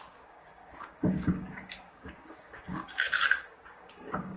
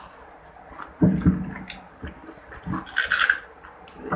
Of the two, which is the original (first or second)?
second